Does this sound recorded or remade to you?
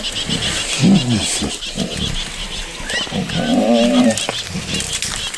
recorded